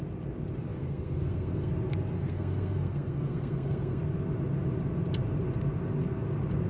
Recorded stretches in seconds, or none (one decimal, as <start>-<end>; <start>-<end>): 0.0-0.7; 1.7-2.2; 4.0-6.7